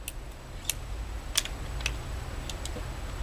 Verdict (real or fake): real